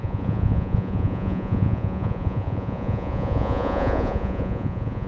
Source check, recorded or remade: remade